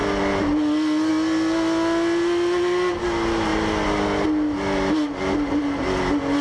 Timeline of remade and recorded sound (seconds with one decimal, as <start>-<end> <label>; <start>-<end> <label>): 0.0-6.4 recorded